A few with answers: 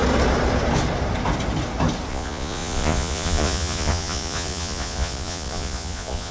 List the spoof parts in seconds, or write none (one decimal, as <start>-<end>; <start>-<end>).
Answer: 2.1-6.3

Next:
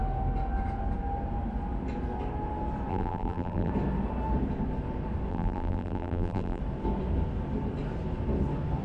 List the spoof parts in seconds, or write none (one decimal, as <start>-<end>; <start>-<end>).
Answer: 2.9-3.7; 5.3-6.6

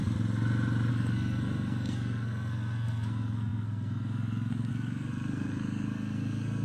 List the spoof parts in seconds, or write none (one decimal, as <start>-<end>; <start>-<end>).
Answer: 0.9-6.6

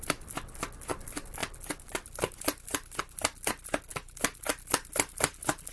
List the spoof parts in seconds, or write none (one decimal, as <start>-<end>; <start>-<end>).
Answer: none

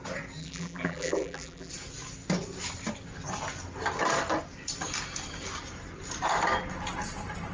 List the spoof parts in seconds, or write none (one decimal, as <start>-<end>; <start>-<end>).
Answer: 0.4-1.7

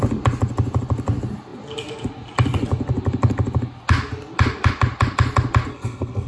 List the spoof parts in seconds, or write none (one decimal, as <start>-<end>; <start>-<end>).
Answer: 5.7-6.3

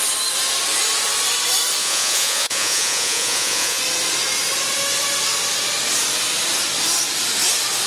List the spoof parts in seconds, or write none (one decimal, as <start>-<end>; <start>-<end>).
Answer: 1.8-3.8

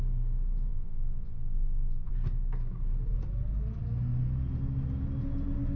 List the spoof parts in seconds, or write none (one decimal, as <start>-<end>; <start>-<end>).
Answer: 0.7-2.1